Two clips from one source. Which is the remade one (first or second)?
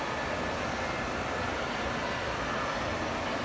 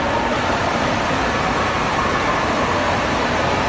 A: second